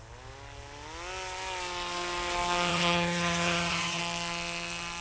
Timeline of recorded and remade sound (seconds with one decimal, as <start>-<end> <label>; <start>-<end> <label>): 0.0-2.7 recorded; 2.7-4.0 remade; 4.0-5.0 recorded

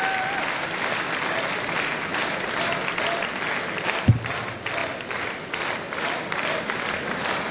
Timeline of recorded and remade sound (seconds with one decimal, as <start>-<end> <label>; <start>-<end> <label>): 0.0-7.5 recorded

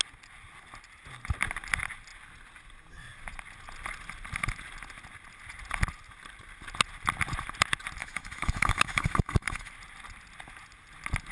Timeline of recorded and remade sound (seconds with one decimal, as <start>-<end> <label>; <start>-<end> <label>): 0.0-8.0 recorded; 8.0-9.7 remade; 9.7-11.3 recorded

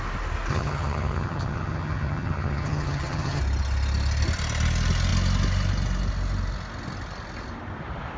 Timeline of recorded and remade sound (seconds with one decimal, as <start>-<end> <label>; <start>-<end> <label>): 0.0-0.5 recorded; 0.5-3.4 remade; 3.4-8.2 recorded

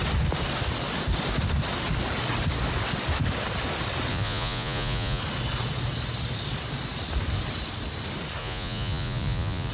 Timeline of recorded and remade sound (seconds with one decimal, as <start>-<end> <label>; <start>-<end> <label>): 0.0-4.1 recorded; 4.1-5.2 remade; 5.2-8.4 recorded; 8.4-9.7 remade